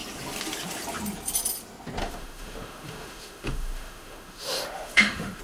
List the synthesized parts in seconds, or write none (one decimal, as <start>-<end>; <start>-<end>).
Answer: 2.0-5.4